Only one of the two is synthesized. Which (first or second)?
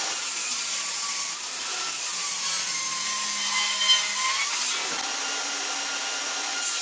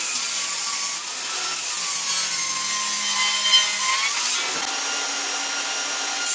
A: first